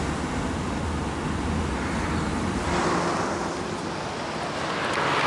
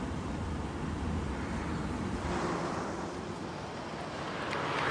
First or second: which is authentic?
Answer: first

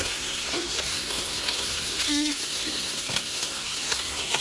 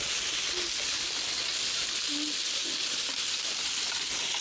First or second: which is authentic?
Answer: second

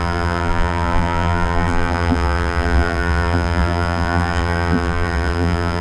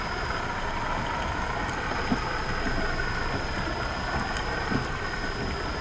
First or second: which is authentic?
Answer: second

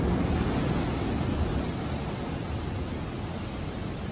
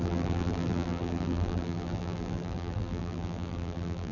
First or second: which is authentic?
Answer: first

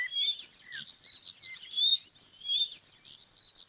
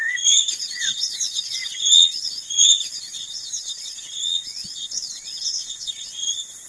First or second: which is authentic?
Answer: first